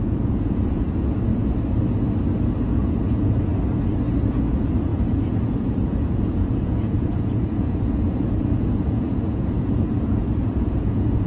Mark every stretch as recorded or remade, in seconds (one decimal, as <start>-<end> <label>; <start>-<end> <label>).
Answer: 0.0-1.3 remade; 1.3-2.7 recorded; 2.7-3.5 remade; 3.5-4.3 recorded; 4.3-11.3 remade